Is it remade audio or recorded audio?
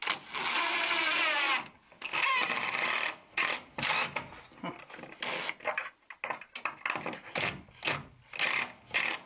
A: recorded